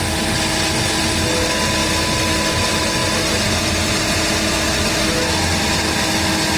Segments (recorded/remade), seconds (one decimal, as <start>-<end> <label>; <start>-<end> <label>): 0.0-6.6 recorded